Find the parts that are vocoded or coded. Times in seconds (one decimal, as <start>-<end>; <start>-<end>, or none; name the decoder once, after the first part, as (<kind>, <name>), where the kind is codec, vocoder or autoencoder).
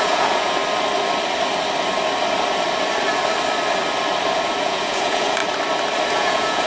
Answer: 0.0-0.6 (vocoder, Vocos); 4.6-5.4; 6.1-6.7